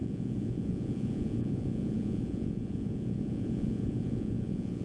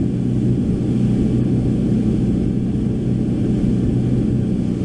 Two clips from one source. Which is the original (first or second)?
second